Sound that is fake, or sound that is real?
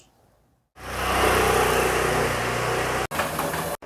real